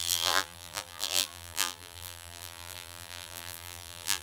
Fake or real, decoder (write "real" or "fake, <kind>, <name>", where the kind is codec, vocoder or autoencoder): fake, vocoder, BigVGAN v2